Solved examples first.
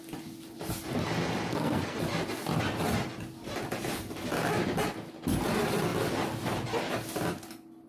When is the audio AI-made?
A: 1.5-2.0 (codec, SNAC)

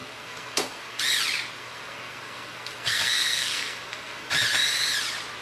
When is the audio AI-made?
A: 0.0-1.0 (codec, SNAC); 1.6-4.3

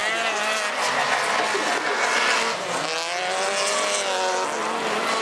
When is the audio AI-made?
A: none

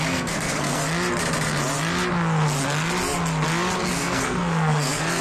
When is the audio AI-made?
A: 0.0-0.8 (codec, SNAC); 3.9-5.2